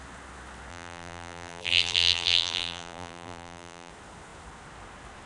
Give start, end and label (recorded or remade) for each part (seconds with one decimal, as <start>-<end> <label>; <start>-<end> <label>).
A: 0.0-0.7 recorded; 0.7-3.9 remade; 3.9-5.3 recorded